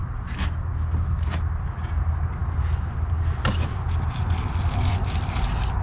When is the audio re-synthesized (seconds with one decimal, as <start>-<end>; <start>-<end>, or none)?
none